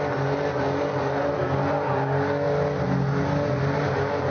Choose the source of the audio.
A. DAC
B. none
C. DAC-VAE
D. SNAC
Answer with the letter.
B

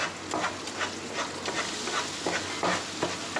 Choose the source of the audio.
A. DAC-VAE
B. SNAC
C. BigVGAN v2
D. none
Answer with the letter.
D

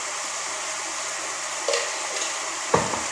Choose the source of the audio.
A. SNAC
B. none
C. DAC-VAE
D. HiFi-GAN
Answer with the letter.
B